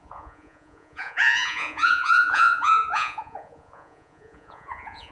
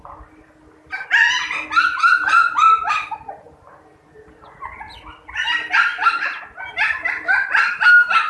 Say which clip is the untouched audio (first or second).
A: second